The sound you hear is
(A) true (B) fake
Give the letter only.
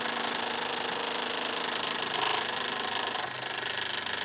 A